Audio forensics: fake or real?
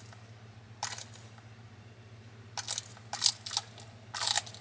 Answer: real